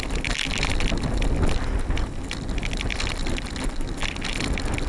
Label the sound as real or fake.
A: real